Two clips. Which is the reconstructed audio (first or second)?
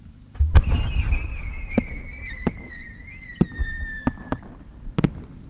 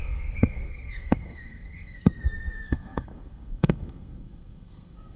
second